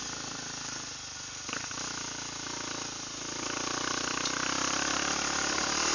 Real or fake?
real